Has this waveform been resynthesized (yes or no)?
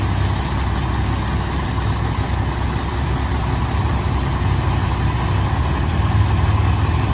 no